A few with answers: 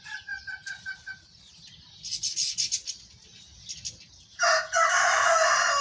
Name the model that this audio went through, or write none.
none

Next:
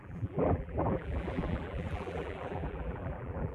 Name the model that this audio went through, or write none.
vocoder, BigVGAN v2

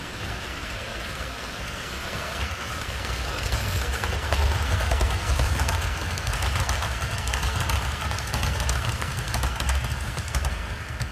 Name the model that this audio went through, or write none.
codec, SNAC